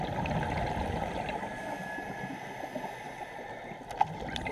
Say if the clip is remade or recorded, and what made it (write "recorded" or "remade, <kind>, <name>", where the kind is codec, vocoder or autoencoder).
recorded